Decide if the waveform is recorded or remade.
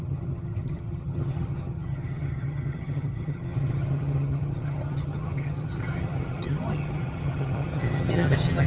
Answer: remade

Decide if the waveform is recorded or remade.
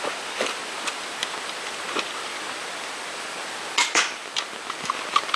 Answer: recorded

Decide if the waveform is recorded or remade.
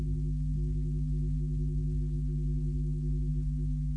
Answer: recorded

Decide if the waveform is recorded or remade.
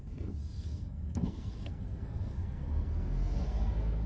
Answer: remade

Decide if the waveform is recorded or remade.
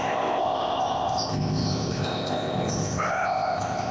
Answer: remade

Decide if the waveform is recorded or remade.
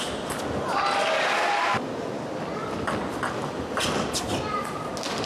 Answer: recorded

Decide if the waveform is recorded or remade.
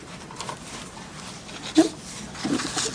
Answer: recorded